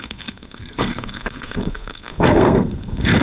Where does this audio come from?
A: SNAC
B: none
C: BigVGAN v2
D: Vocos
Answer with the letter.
A